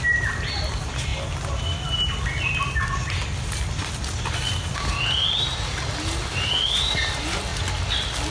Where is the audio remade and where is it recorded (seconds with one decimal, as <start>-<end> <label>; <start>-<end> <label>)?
0.0-8.3 recorded